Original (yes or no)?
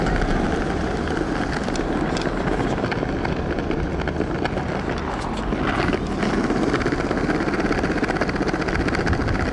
yes